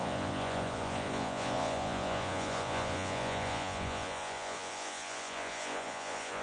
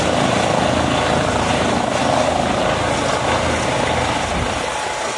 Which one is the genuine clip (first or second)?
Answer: second